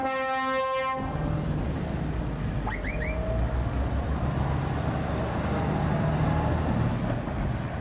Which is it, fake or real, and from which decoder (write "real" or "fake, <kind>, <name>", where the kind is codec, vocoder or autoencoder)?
real